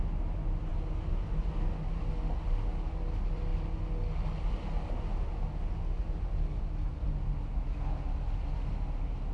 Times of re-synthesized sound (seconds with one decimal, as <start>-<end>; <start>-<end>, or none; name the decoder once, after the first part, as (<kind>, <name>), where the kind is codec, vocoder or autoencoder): none